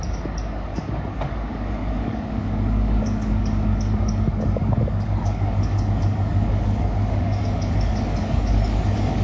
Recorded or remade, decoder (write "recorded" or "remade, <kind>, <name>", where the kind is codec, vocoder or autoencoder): remade, codec, DAC